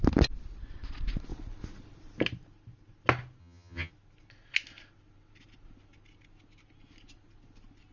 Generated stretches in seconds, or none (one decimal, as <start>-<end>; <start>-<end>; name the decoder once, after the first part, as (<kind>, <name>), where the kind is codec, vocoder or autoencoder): 3.4-3.9 (vocoder, HiFi-GAN)